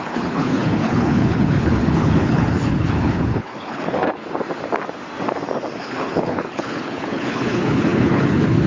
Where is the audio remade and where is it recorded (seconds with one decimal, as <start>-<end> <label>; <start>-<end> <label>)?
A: 0.0-4.2 remade; 4.2-5.8 recorded; 5.8-8.7 remade